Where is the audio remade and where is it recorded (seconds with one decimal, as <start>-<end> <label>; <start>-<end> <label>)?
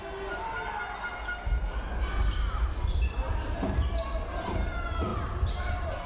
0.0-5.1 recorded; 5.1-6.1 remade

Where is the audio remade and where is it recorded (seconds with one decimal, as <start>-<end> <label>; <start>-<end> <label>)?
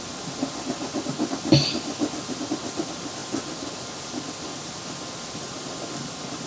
0.0-6.5 recorded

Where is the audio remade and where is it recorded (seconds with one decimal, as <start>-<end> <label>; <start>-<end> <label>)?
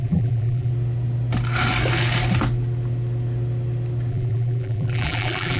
0.0-0.7 remade; 0.7-4.1 recorded; 4.1-5.6 remade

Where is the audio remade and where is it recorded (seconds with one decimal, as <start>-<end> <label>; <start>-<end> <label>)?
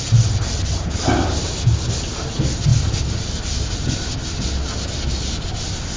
0.0-6.0 recorded